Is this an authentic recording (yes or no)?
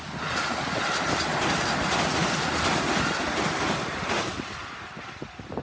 yes